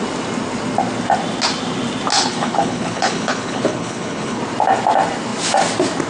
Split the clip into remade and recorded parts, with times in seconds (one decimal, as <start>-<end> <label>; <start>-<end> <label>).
0.0-2.1 recorded; 2.1-4.4 remade; 4.4-6.1 recorded